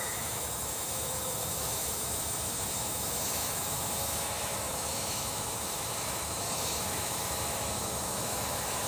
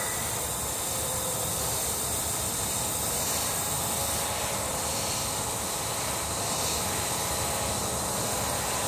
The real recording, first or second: second